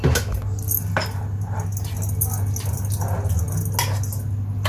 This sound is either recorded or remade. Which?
recorded